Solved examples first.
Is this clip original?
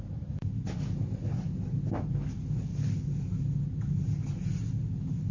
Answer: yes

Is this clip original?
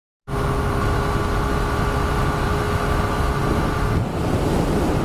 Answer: yes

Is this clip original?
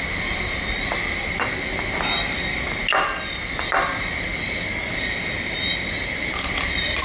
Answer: yes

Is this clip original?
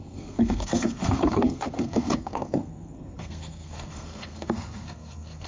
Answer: no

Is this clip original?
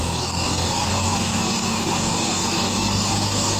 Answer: no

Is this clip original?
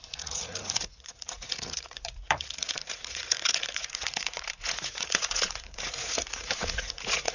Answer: no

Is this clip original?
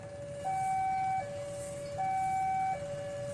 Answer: yes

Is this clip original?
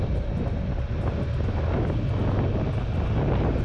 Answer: yes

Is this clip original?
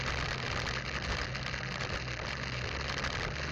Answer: yes